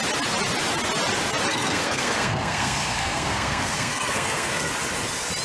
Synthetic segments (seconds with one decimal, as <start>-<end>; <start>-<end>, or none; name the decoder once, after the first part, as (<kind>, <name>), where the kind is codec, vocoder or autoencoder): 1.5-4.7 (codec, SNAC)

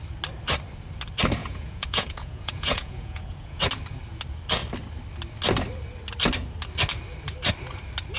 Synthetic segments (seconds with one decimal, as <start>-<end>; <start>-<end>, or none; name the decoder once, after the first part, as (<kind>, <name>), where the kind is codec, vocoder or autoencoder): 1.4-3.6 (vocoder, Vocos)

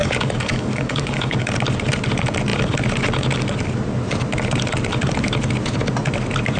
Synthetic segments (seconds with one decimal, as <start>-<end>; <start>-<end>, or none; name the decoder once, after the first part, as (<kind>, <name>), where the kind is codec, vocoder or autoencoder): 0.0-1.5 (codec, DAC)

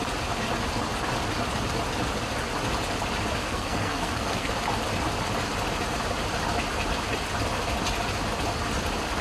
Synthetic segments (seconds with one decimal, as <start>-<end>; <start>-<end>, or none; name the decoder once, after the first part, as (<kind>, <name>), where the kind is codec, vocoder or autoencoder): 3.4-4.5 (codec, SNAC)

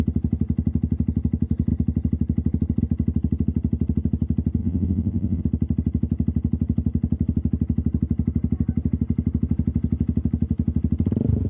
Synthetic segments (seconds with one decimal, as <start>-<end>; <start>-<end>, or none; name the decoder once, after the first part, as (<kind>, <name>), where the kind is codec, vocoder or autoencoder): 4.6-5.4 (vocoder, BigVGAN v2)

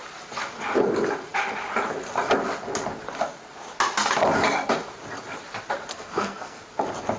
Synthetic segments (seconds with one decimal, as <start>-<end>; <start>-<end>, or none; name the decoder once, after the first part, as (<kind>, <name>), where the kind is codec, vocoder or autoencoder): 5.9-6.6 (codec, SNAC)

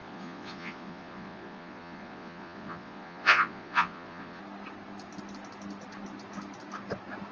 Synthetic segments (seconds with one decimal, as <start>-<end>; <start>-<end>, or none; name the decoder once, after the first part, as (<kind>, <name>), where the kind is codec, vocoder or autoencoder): 0.0-4.4 (vocoder, Vocos)

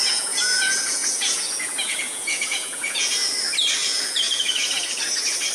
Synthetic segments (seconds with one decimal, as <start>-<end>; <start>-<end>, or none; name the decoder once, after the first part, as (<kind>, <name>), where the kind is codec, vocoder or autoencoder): 0.0-3.3 (vocoder, Vocos); 3.8-5.0